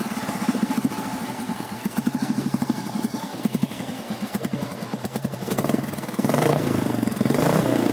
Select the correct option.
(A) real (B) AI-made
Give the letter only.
B